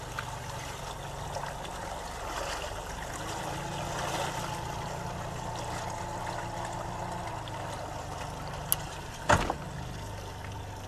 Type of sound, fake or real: real